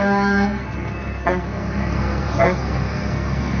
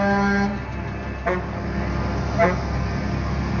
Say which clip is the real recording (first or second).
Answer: second